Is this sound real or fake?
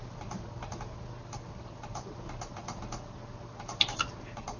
real